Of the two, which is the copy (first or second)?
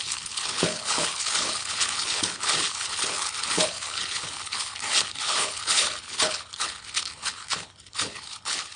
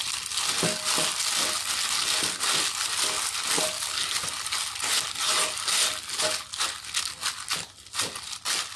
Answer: first